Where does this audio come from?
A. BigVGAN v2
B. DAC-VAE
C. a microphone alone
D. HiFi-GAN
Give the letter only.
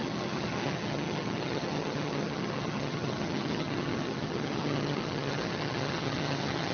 D